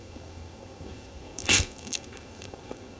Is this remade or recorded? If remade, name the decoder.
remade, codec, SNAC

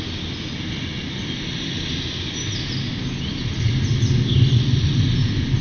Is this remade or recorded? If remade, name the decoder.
recorded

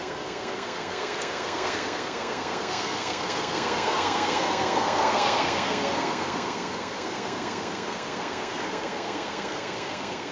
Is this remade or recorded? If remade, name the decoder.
remade, codec, SNAC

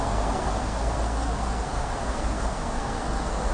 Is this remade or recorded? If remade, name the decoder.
remade, codec, SNAC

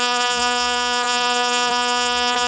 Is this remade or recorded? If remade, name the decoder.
remade, codec, SNAC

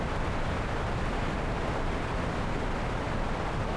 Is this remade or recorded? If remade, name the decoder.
recorded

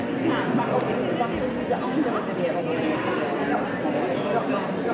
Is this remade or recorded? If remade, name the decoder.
recorded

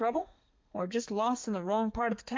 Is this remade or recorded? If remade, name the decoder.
remade, codec, SNAC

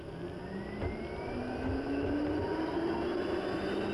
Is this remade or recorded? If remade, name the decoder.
recorded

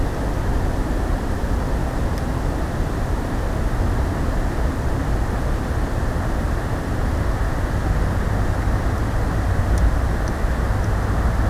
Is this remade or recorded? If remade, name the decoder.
recorded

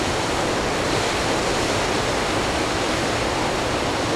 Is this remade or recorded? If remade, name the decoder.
recorded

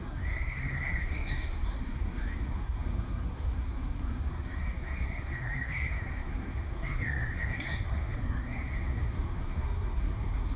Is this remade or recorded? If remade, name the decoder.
remade, codec, SNAC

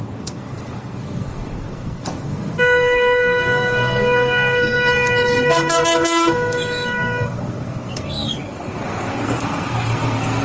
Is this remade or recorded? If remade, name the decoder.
remade, codec, SNAC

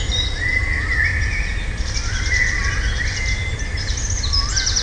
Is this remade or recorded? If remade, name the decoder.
recorded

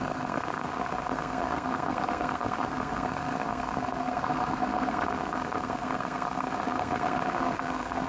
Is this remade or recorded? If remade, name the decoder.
remade, codec, SNAC